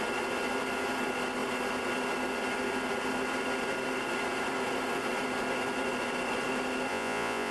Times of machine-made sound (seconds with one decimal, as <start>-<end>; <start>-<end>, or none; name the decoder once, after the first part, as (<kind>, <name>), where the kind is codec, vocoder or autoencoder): 6.9-7.5 (vocoder, Vocos)